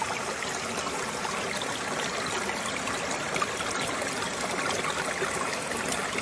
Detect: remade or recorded recorded